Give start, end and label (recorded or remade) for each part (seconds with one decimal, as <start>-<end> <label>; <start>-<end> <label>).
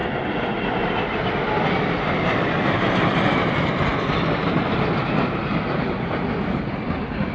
0.0-7.3 recorded